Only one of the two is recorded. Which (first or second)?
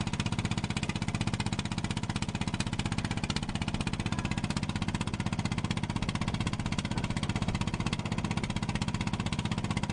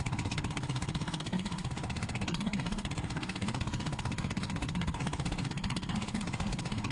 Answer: first